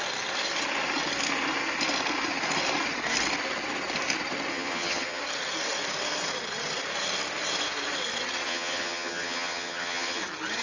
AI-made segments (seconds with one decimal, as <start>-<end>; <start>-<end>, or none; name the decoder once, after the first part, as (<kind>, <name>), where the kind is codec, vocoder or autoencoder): 4.5-5.2 (vocoder, HiFi-GAN); 8.5-10.2